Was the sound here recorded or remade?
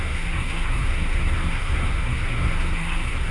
remade